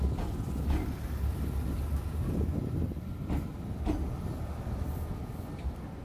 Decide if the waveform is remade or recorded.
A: recorded